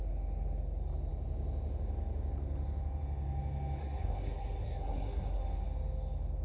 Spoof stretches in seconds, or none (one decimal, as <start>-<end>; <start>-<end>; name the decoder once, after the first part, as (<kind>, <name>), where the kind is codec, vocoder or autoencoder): 3.8-5.4 (codec, SNAC)